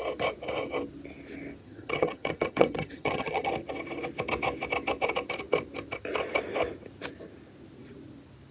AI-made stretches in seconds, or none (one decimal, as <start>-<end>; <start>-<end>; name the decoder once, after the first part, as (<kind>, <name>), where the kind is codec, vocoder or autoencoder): 1.6-3.5 (vocoder, HiFi-GAN)